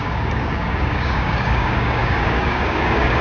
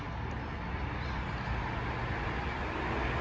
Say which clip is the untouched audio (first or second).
second